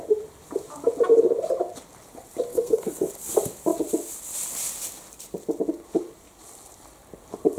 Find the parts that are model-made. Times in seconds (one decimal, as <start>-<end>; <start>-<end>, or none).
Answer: 2.5-3.1

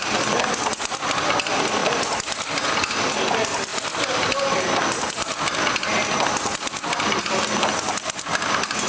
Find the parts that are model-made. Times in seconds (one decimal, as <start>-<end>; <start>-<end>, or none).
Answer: none